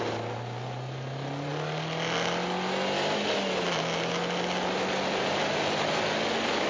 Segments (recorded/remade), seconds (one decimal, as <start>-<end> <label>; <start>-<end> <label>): 0.0-6.7 recorded